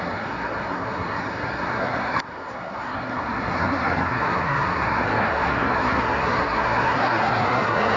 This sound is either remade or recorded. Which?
remade